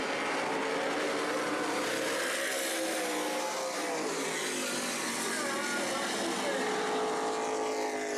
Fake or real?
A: real